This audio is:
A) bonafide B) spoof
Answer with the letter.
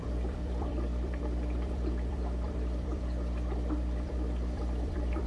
B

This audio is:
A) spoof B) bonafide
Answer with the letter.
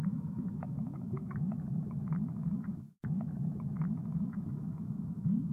A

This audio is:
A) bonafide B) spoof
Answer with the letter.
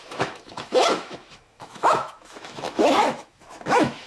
B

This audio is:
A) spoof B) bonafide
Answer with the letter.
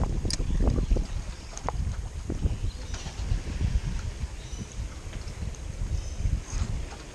B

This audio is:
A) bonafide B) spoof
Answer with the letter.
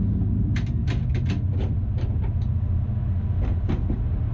A